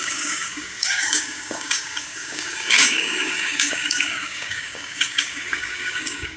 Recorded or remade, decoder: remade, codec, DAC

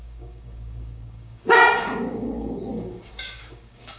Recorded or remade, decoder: remade, codec, DAC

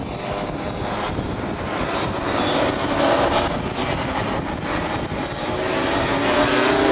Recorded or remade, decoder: recorded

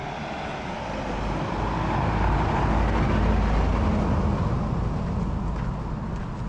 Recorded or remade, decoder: recorded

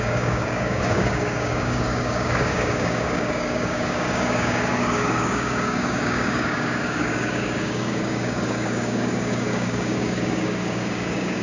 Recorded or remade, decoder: remade, codec, DAC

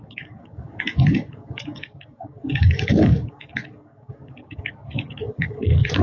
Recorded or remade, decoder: remade, codec, DAC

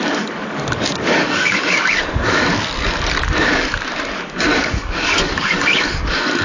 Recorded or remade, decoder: remade, codec, DAC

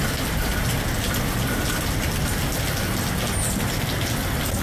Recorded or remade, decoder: recorded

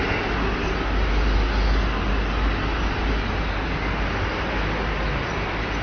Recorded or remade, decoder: recorded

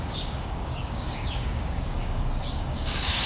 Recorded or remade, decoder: remade, codec, DAC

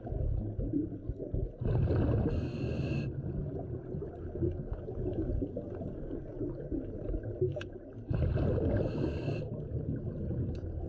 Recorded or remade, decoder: recorded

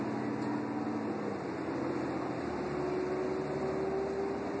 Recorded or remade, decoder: recorded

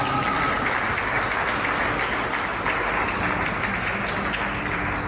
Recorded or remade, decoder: recorded